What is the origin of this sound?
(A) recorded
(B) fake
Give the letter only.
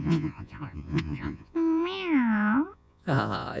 B